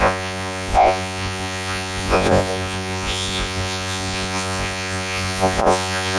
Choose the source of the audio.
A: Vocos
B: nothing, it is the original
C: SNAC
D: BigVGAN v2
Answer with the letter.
A